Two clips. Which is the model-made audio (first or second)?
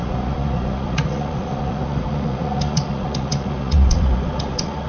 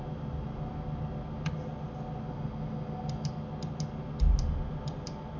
first